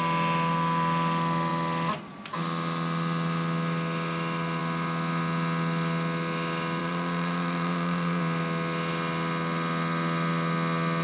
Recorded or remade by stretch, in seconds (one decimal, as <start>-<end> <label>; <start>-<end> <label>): 0.0-6.8 recorded; 6.8-8.2 remade; 8.2-11.0 recorded